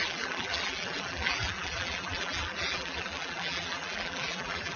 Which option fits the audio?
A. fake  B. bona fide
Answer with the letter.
A